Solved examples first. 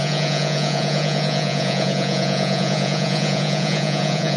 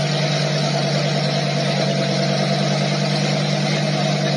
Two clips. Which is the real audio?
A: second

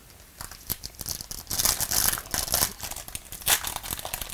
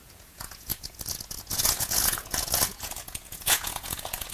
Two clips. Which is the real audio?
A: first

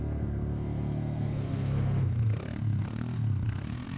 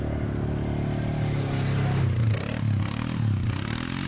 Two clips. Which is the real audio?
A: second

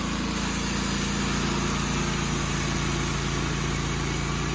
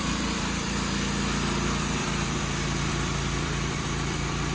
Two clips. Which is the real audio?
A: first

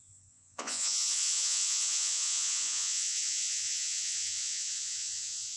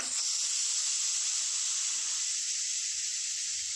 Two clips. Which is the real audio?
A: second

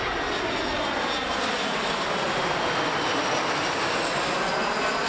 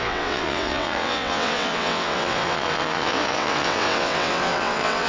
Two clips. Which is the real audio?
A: first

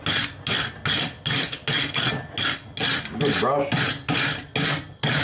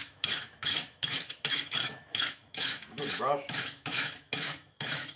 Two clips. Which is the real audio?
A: first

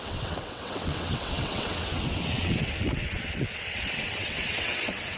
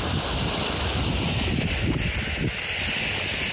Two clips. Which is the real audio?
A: second